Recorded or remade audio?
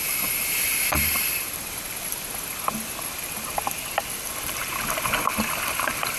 recorded